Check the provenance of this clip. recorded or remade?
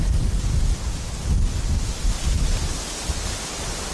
recorded